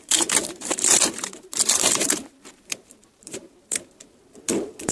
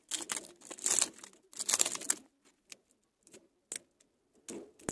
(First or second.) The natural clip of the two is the second